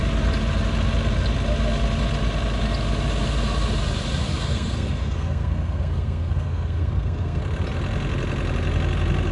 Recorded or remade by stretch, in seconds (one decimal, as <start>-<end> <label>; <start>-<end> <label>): 0.0-4.3 recorded; 4.3-7.4 remade; 7.4-9.3 recorded